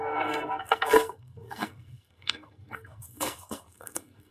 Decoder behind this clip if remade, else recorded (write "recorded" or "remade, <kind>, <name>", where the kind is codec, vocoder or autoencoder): remade, codec, SNAC